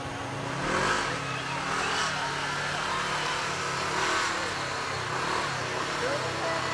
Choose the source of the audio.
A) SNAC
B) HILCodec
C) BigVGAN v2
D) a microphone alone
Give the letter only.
D